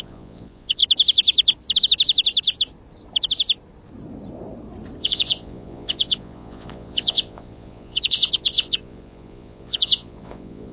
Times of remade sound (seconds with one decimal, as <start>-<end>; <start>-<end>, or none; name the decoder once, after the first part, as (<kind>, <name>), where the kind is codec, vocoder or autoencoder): 0.0-0.8 (vocoder, Vocos); 5.0-10.7